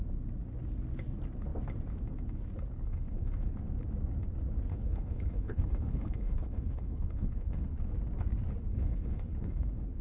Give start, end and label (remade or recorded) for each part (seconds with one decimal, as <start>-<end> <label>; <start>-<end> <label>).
0.0-2.8 recorded; 2.8-3.5 remade; 3.5-4.7 recorded; 4.7-7.9 remade; 7.9-8.7 recorded; 8.7-10.0 remade